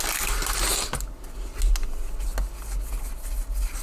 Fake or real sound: real